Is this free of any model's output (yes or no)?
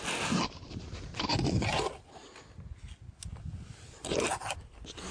yes